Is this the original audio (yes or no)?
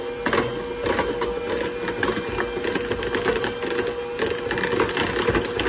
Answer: yes